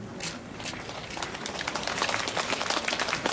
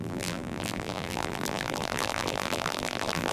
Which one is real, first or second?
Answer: first